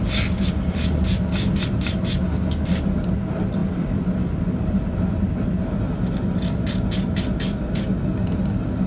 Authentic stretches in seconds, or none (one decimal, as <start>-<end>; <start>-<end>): 0.0-8.9